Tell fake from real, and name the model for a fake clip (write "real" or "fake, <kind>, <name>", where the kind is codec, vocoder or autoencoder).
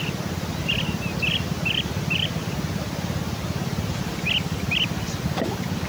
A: real